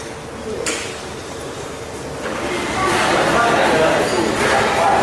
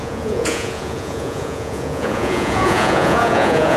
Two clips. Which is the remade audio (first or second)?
second